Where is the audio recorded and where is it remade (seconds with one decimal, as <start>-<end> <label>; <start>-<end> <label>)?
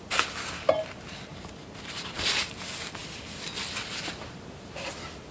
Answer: 0.0-1.3 recorded; 1.3-2.5 remade; 2.5-5.3 recorded